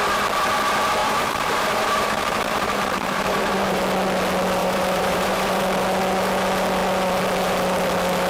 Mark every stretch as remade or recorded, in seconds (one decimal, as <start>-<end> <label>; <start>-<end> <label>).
0.0-1.0 recorded; 1.0-3.8 remade; 3.8-4.6 recorded; 4.6-5.6 remade; 5.6-8.3 recorded